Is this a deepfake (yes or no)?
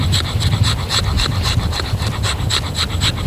yes